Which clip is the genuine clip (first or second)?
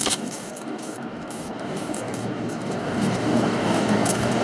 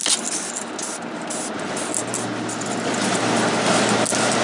second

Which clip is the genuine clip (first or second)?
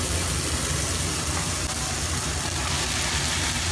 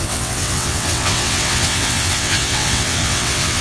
first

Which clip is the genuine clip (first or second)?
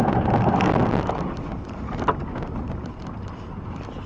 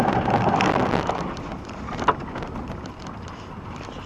first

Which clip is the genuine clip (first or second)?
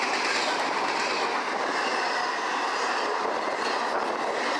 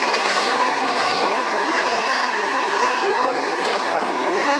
first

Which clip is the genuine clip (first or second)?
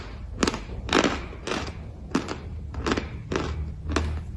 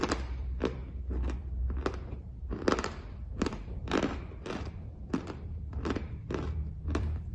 first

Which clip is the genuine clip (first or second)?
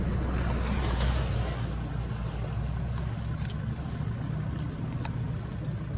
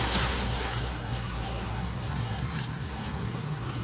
first